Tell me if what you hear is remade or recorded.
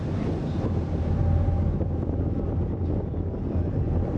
recorded